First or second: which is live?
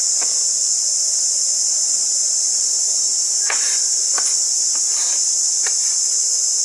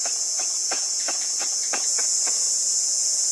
first